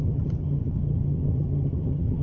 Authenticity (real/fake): fake